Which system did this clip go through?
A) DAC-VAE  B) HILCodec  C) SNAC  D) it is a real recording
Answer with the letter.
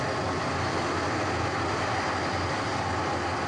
D